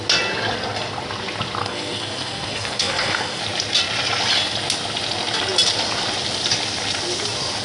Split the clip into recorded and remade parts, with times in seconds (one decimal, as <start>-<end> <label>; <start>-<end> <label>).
0.0-1.6 recorded; 1.6-3.4 remade; 3.4-7.6 recorded